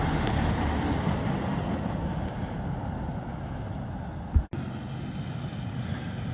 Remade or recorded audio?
recorded